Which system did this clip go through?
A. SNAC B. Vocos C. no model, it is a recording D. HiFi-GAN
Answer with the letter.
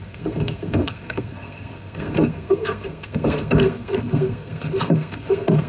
A